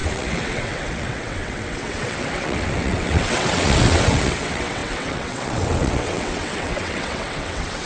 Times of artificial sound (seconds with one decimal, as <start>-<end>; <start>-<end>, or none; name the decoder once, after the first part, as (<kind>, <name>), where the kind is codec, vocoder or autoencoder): 0.0-7.9 (vocoder, WaveNeXt)